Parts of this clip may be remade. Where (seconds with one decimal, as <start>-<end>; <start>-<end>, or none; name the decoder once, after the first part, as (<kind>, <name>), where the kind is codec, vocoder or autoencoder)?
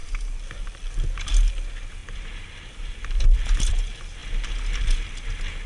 2.0-3.6 (vocoder, BigVGAN v2)